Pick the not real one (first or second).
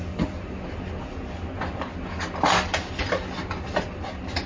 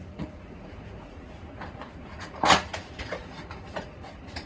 second